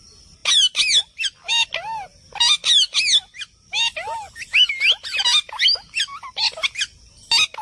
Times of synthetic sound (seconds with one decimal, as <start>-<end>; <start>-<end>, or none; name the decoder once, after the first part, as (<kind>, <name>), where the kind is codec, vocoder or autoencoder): none